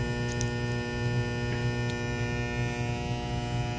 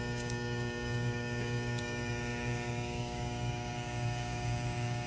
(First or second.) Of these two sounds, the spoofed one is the second